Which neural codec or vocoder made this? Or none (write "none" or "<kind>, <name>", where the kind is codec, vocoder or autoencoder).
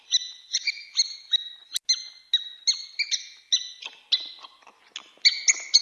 none